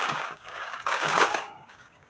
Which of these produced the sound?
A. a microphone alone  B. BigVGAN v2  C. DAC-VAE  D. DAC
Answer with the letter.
D